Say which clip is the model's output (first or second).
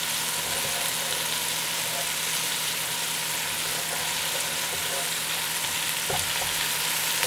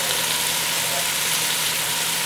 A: second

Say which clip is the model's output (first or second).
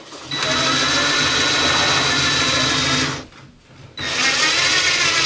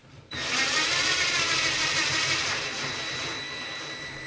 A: second